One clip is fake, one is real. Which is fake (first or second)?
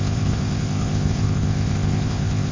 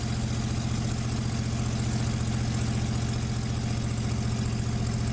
first